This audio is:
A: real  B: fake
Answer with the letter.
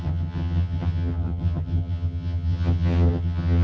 B